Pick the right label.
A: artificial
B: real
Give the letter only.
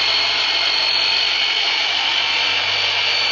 B